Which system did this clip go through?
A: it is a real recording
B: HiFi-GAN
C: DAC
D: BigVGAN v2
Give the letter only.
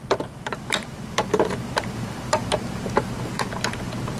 D